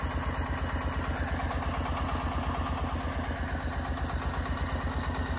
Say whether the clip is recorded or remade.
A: recorded